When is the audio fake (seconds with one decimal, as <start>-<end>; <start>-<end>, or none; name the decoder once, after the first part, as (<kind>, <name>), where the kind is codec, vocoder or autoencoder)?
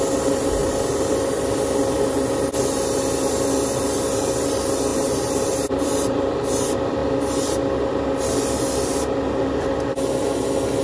0.6-1.1 (vocoder, BigVGAN v2); 4.9-6.3